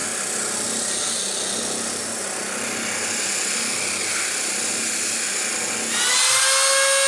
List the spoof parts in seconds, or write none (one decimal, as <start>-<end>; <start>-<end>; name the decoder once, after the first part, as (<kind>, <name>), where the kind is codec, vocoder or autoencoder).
none